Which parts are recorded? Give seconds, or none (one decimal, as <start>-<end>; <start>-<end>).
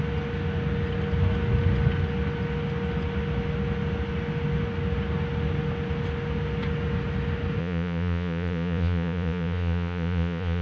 0.0-7.6